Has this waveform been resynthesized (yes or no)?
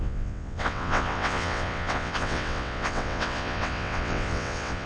yes